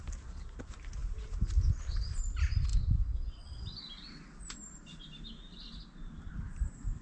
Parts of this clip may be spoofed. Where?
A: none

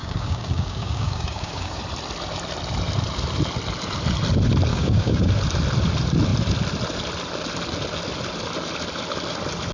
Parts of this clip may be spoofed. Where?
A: 0.0-1.8 (codec, DAC); 4.7-5.3

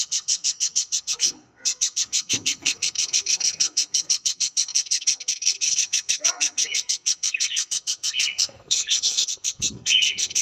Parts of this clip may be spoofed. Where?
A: 0.0-10.4 (codec, SNAC)